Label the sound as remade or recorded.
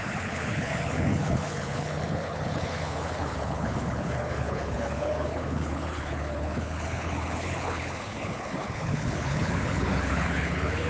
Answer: remade